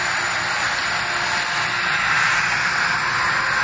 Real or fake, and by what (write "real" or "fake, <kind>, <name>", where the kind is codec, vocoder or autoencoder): real